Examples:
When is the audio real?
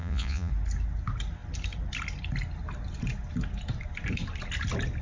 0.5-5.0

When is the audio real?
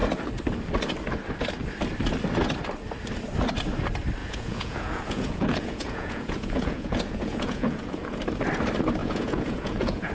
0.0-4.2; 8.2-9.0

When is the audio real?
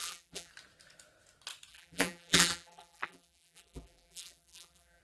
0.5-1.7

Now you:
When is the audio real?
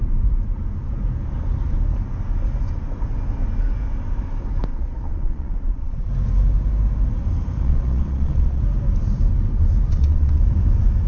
0.0-4.7; 6.1-7.6; 8.6-9.9; 10.4-11.1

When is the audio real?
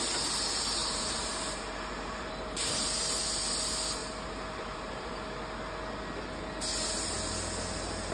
0.0-0.8; 2.9-4.0; 5.1-8.1